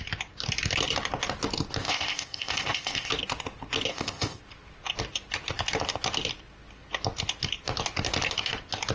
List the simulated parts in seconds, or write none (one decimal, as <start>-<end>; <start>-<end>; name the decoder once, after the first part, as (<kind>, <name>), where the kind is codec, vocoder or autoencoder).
1.8-3.1 (codec, ZipCodec); 3.9-4.4